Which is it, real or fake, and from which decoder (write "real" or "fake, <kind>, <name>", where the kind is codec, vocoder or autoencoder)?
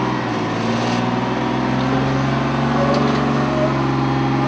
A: real